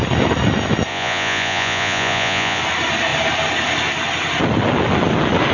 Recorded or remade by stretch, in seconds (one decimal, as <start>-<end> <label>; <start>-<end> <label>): 0.0-0.9 recorded; 0.9-2.6 remade; 2.6-5.5 recorded

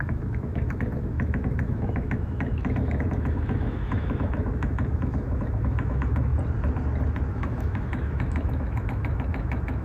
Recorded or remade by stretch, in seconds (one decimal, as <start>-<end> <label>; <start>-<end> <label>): 0.0-6.3 remade; 6.3-7.3 recorded; 7.3-9.8 remade

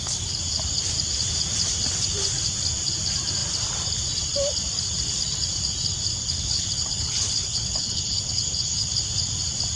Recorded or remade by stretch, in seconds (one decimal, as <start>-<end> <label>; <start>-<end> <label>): 0.0-6.2 recorded; 6.2-8.9 remade; 8.9-9.8 recorded

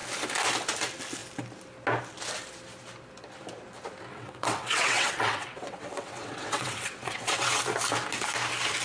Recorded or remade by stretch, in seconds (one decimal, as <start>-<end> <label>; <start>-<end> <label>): 0.0-4.1 recorded; 4.1-7.6 remade; 7.6-8.8 recorded

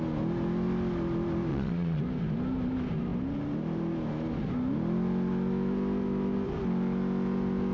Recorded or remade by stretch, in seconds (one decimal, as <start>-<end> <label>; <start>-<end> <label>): 0.0-1.5 recorded; 1.5-2.0 remade; 2.0-7.7 recorded

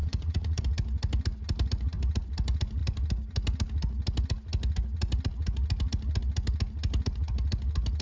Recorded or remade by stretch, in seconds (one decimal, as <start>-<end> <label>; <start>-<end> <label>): 0.0-0.6 remade; 0.6-8.0 recorded

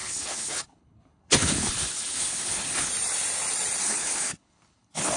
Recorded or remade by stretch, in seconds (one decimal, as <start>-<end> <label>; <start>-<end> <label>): 0.0-2.9 remade; 2.9-3.8 recorded; 3.8-5.2 remade